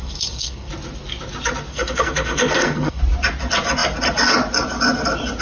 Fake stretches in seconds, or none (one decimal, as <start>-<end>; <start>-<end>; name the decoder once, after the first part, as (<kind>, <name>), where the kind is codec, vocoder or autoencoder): 0.0-0.7 (codec, SNAC); 1.7-3.0